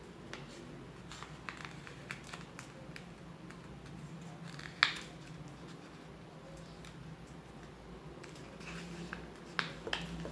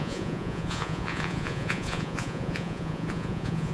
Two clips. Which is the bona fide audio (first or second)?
first